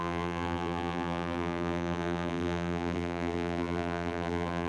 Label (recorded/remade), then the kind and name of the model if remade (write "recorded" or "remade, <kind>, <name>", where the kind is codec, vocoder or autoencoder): remade, vocoder, BigVGAN v2